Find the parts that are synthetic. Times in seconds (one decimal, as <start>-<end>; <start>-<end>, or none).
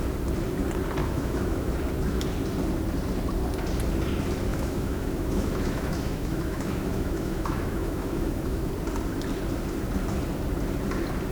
1.0-1.7; 4.5-8.7